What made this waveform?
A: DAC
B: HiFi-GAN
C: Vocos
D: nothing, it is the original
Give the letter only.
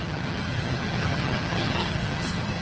B